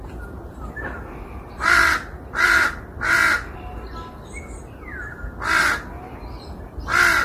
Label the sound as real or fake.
real